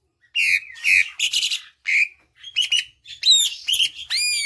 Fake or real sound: real